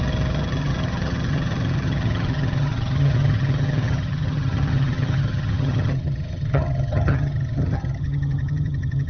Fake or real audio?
fake